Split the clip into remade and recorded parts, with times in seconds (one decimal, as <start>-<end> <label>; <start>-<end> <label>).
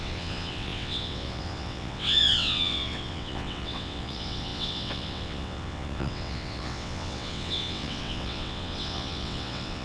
0.0-9.8 remade